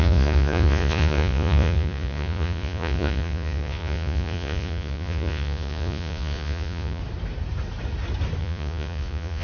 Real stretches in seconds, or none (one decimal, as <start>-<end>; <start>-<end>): 7.0-8.4